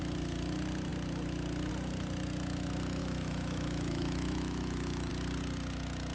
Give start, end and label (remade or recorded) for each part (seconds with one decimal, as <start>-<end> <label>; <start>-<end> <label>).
0.0-3.0 recorded; 3.0-5.1 remade; 5.1-6.1 recorded